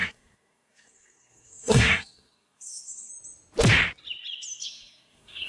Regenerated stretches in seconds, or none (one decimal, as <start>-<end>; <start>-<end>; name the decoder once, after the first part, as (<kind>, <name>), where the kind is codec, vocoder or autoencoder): 0.0-3.1 (codec, SNAC); 4.6-5.5